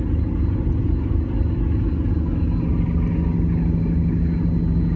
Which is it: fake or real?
real